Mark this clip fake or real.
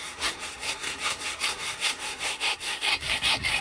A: fake